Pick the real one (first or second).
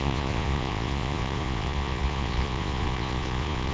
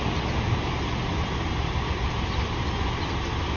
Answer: second